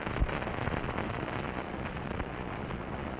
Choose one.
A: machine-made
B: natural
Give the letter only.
A